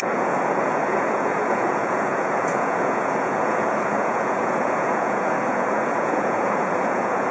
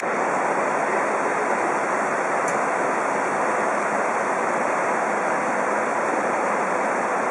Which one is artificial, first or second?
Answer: first